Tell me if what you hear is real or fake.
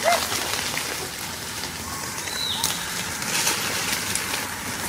real